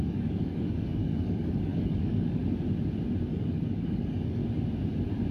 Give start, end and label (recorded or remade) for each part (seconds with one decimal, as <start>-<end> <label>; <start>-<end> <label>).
0.0-2.4 remade; 2.4-3.3 recorded; 3.3-4.4 remade; 4.4-5.3 recorded